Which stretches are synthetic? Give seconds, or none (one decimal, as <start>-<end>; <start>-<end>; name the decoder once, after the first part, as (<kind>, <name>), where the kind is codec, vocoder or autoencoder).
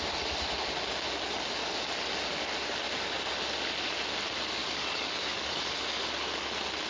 4.6-5.6 (codec, DAC)